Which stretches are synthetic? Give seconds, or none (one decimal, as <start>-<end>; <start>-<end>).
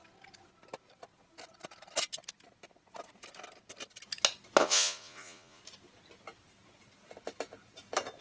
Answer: 4.6-5.6